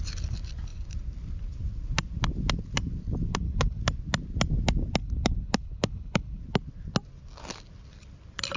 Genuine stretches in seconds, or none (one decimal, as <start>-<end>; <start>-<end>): 0.0-3.3; 3.8-5.0; 6.4-8.6